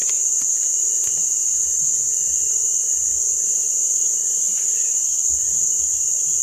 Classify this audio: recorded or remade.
recorded